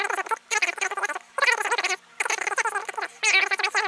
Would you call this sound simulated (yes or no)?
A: no